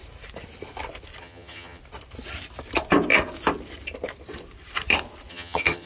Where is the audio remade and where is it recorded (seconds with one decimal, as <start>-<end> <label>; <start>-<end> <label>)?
0.0-1.2 recorded; 1.2-1.8 remade; 1.8-5.3 recorded; 5.3-5.9 remade